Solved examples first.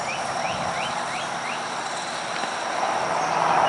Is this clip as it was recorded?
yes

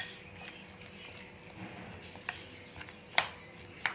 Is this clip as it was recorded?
yes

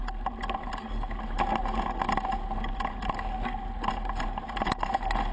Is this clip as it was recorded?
yes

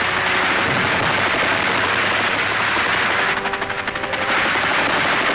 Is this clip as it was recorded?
yes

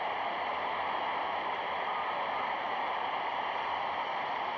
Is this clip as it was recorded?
yes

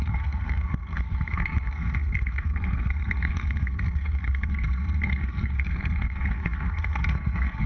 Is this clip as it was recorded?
no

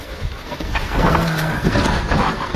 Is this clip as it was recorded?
no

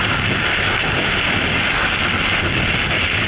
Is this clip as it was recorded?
yes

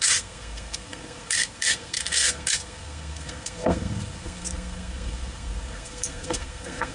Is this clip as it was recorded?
no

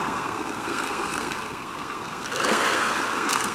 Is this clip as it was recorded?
no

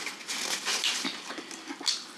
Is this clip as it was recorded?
yes